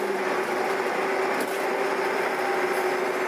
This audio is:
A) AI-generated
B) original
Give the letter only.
B